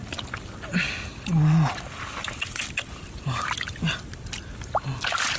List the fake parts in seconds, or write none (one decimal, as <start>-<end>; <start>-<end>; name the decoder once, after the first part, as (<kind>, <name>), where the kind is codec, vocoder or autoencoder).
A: none

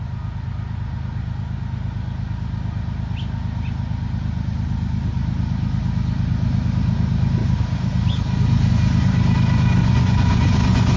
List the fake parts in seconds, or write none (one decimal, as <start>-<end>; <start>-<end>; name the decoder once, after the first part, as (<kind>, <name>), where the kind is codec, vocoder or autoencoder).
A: 9.8-11.0 (vocoder, Vocos)

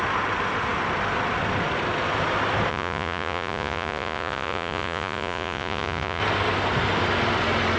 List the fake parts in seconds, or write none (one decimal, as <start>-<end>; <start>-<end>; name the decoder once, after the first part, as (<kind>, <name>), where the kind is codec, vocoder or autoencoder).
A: 2.7-6.2 (vocoder, Vocos)

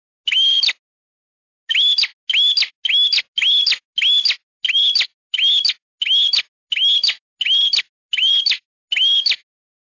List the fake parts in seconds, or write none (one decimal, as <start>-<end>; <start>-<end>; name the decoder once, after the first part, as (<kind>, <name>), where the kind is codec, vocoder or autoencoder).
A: none